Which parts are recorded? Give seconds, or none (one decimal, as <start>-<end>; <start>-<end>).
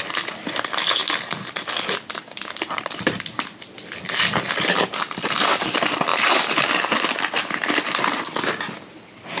0.0-9.4